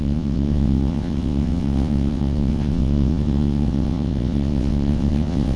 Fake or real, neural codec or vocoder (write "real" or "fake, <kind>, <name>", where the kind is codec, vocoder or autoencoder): fake, vocoder, WaveNeXt